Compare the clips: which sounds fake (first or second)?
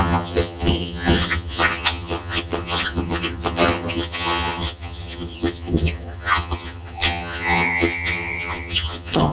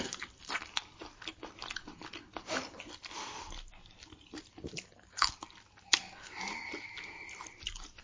first